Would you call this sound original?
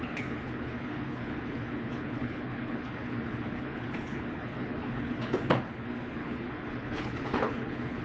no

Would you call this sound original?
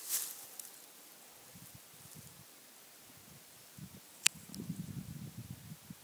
yes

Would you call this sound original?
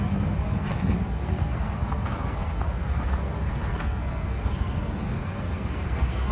no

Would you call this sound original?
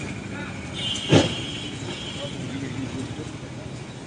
yes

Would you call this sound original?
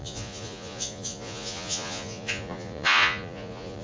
no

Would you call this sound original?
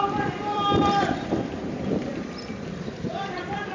no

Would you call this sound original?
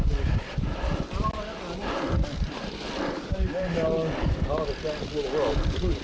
yes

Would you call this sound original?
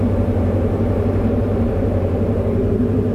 no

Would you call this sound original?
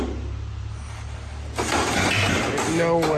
yes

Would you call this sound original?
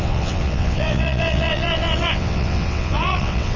no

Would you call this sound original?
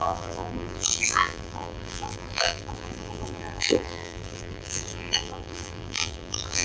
no